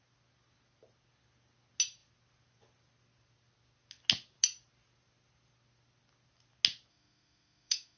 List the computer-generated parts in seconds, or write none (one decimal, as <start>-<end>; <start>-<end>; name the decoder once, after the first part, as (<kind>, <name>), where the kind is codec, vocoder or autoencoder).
6.9-8.0 (autoencoder, DAC-VAE)